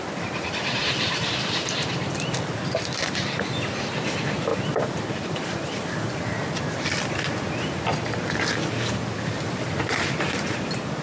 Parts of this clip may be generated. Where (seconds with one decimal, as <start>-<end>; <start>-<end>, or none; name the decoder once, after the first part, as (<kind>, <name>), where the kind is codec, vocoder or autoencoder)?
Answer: 0.0-4.5 (vocoder, BigVGAN v2); 5.1-11.0